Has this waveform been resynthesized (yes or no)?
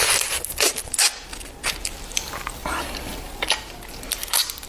no